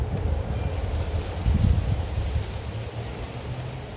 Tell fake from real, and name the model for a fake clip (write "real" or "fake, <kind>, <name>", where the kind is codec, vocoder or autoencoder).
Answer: real